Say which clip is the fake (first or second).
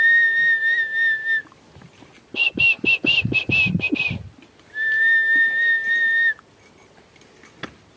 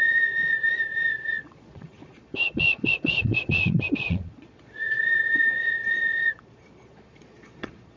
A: second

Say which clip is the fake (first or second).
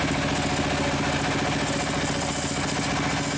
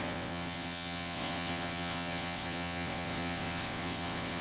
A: second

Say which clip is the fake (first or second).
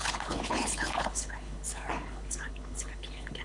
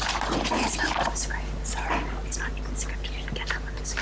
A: first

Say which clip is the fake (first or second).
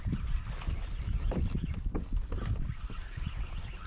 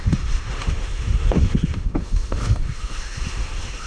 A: second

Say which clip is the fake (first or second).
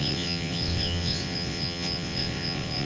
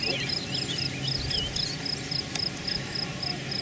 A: first